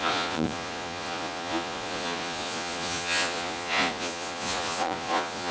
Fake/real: fake